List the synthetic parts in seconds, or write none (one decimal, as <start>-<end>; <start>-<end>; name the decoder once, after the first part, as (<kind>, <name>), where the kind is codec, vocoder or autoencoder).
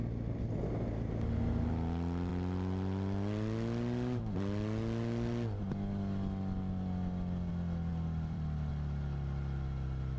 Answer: 7.9-8.7 (vocoder, BigVGAN v2)